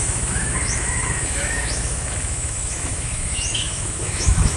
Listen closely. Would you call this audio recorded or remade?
remade